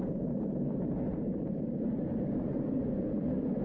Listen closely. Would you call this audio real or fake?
fake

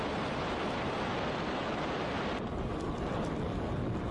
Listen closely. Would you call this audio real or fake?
real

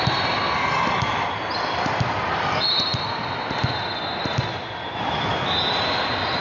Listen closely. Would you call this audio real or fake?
real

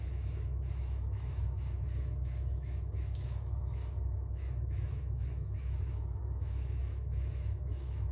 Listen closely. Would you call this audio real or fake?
fake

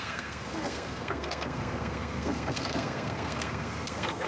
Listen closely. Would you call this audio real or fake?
fake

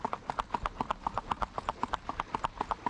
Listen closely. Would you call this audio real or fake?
real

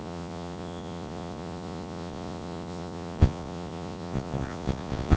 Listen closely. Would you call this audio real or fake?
fake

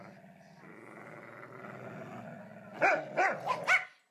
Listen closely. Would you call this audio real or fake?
real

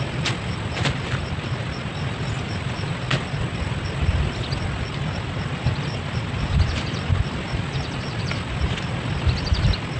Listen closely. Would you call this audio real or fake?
real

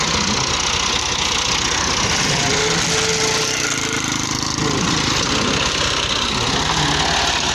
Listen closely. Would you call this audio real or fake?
real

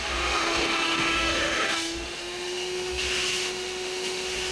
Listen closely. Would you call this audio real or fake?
fake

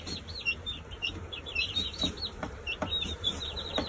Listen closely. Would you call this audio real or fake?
fake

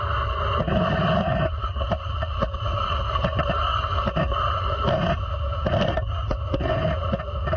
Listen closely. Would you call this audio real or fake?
real